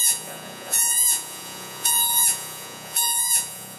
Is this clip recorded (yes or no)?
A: no